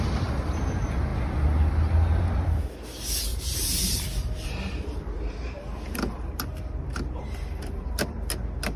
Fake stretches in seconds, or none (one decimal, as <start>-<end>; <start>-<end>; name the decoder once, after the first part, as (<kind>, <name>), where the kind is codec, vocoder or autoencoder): 3.3-8.1 (vocoder, BigVGAN v2)